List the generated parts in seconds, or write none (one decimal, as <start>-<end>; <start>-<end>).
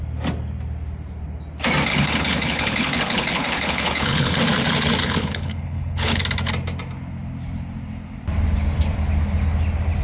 1.9-4.4; 5.0-6.2